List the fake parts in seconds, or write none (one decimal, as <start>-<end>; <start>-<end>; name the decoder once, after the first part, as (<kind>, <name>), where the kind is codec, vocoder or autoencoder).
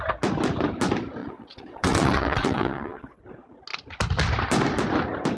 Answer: 1.2-3.2 (vocoder, WaveNeXt)